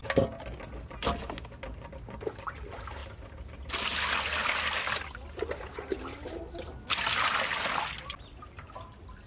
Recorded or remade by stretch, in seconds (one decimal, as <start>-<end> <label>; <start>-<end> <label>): 0.0-9.3 recorded